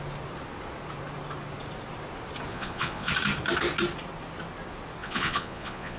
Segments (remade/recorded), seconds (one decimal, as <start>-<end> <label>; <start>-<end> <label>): 0.0-2.5 recorded; 2.5-3.1 remade; 3.1-5.0 recorded; 5.0-6.0 remade